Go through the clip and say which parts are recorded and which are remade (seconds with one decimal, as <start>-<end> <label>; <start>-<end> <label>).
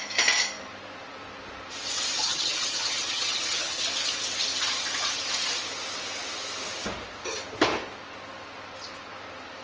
0.0-2.2 recorded; 2.2-3.8 remade; 3.8-9.6 recorded